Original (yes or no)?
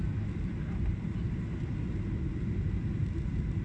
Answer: yes